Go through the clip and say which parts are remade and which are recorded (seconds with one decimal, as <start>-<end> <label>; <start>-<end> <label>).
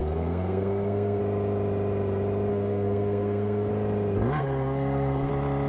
0.0-1.2 remade; 1.2-2.5 recorded; 2.5-3.7 remade; 3.7-4.4 recorded; 4.4-5.3 remade; 5.3-5.7 recorded